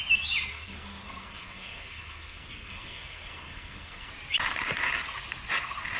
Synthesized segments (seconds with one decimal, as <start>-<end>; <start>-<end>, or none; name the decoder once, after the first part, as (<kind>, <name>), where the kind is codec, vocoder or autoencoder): 0.5-4.1 (codec, SNAC)